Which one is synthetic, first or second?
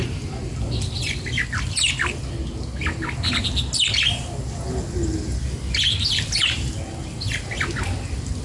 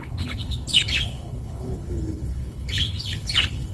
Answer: second